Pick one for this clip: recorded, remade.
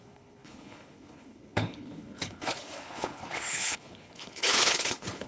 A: remade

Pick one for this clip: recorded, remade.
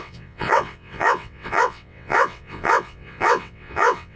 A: remade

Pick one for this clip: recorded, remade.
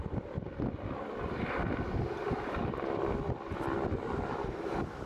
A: recorded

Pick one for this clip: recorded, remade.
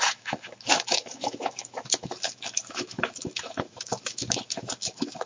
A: remade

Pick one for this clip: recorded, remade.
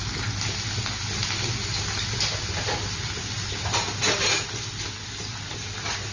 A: recorded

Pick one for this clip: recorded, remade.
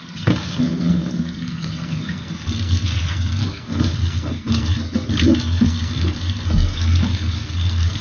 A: remade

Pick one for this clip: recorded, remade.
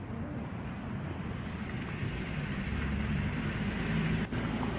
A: recorded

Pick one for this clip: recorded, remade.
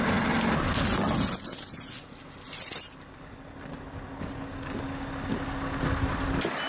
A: recorded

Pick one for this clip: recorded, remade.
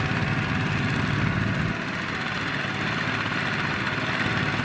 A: recorded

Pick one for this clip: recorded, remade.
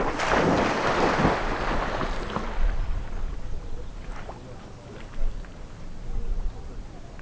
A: recorded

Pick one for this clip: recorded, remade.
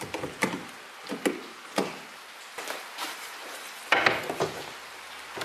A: recorded